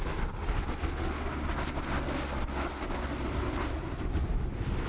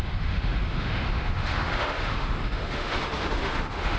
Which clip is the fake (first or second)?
second